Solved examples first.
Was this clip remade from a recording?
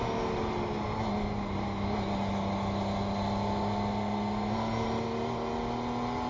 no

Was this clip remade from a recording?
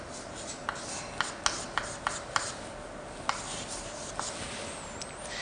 no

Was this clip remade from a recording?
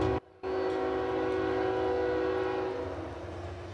no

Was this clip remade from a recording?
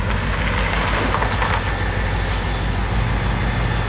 no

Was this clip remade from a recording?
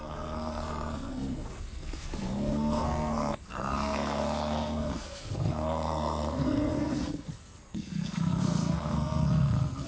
yes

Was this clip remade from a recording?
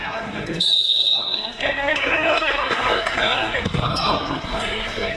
yes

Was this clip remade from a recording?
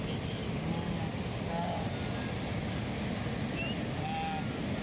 no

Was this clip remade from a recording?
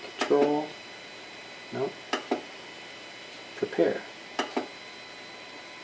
no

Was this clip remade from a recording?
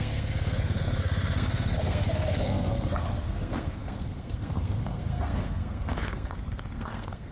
yes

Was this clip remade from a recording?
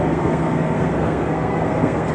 yes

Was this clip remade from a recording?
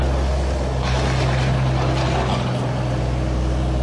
no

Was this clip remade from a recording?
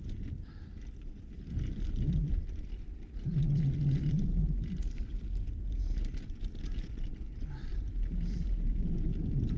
no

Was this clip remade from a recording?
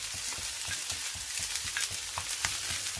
no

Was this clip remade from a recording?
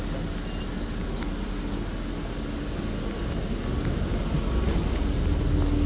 no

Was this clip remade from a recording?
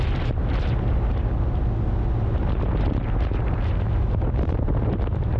no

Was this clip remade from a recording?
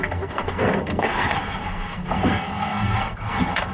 yes